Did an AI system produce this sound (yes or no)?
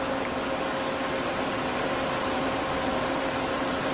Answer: no